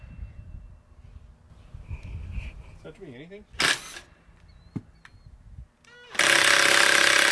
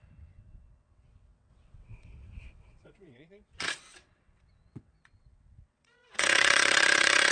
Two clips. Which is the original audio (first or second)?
first